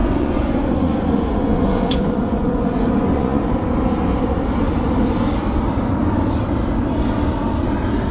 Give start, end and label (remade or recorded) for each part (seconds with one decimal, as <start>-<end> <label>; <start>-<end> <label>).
0.0-3.4 remade; 3.4-8.1 recorded